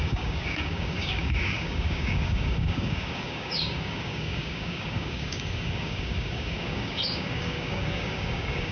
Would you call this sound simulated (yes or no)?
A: yes